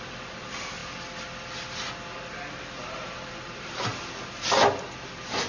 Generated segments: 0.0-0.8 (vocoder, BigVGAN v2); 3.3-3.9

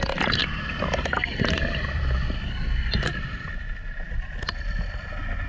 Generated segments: 0.4-3.7 (vocoder, BigVGAN v2)